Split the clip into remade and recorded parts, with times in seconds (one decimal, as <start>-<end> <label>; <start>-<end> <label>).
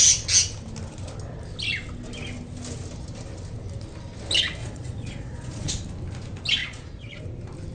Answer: 0.0-4.6 recorded; 4.6-5.7 remade; 5.7-6.6 recorded; 6.6-7.2 remade; 7.2-7.7 recorded